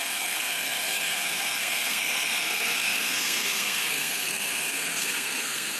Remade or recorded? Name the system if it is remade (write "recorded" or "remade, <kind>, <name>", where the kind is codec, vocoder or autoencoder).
remade, codec, SNAC